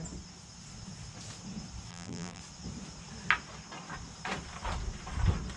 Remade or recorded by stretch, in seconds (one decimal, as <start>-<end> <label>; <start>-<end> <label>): 0.0-1.9 recorded; 1.9-2.4 remade; 2.4-5.6 recorded